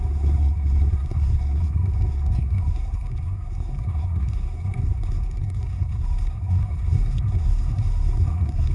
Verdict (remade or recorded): remade